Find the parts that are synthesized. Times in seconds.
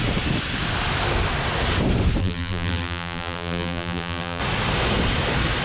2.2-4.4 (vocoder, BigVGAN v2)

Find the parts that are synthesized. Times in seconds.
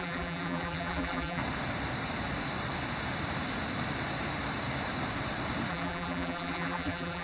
0.0-1.4 (vocoder, BigVGAN v2); 5.7-7.2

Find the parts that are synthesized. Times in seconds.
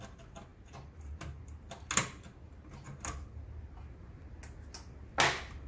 none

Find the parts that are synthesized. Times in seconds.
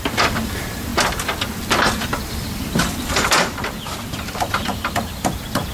0.0-0.9 (vocoder, BigVGAN v2); 2.3-5.7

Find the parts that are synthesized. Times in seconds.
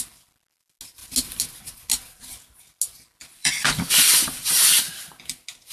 3.4-4.8 (vocoder, BigVGAN v2)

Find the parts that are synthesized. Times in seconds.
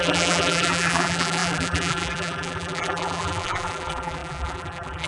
0.0-5.1 (vocoder, BigVGAN v2)